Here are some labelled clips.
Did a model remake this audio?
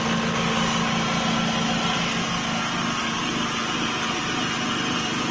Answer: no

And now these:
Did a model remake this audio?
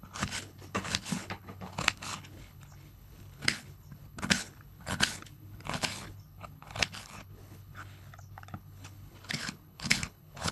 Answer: yes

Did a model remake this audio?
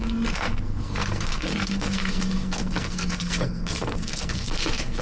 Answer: yes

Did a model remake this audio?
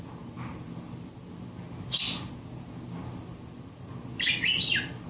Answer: no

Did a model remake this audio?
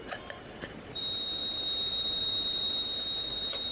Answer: yes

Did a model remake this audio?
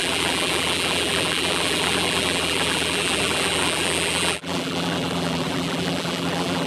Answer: yes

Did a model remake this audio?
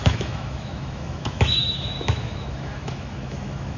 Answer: yes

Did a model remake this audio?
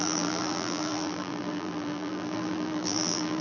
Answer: yes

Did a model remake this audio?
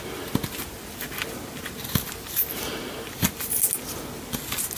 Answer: no